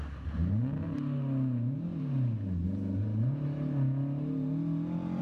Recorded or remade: recorded